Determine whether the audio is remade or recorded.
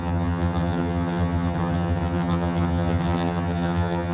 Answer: remade